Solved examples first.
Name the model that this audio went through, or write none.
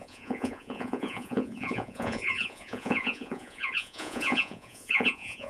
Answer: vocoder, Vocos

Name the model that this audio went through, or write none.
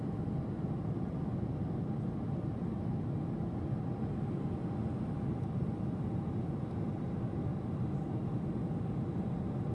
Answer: none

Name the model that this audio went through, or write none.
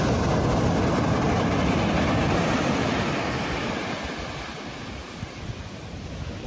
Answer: none